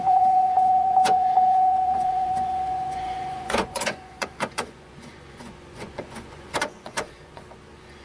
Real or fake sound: fake